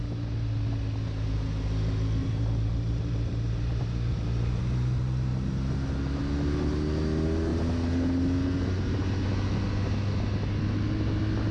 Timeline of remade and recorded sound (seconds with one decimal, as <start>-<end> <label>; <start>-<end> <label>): 0.0-2.2 recorded; 2.2-4.6 remade; 4.6-11.5 recorded